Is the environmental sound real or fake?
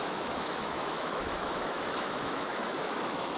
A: fake